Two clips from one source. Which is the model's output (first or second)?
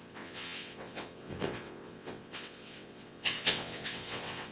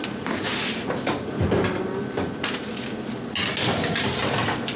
first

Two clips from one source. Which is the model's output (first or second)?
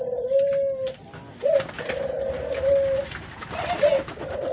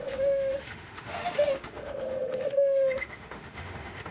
second